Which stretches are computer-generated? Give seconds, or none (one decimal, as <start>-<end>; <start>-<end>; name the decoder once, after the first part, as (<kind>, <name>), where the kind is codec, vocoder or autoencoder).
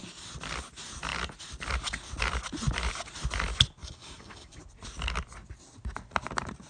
3.8-4.6 (codec, DAC)